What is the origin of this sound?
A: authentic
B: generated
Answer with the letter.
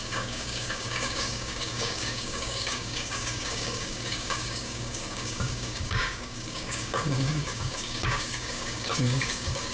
B